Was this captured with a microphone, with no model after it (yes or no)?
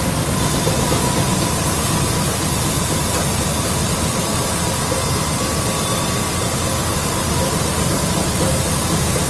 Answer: yes